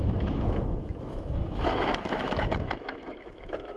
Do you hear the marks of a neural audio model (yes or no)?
yes